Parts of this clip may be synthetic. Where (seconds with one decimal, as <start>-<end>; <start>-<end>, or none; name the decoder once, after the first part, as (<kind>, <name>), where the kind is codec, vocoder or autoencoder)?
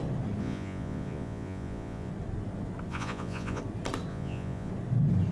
0.4-2.1 (vocoder, Vocos); 2.9-3.6; 4.1-4.7